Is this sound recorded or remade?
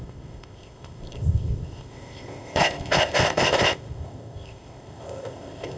remade